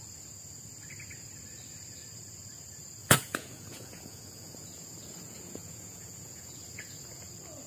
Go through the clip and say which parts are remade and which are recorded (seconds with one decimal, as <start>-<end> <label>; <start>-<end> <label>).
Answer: 0.0-3.0 recorded; 3.0-7.3 remade; 7.3-7.7 recorded